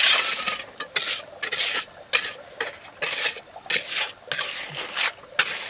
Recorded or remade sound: recorded